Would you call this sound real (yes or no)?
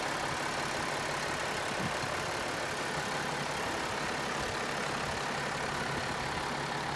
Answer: yes